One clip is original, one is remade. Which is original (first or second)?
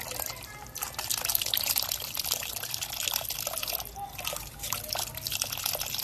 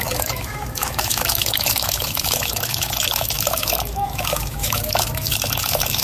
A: first